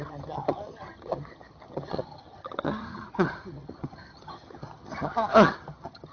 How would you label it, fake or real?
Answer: fake